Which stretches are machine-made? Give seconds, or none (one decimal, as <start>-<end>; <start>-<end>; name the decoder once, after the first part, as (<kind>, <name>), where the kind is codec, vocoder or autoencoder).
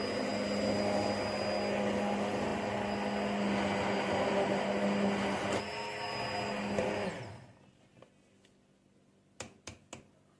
none